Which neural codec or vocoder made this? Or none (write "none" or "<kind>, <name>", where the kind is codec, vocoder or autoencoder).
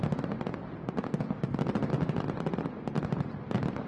none